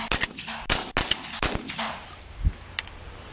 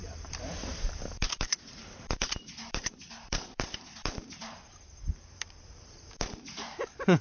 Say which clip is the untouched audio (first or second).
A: first